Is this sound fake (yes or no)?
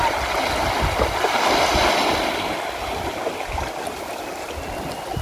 no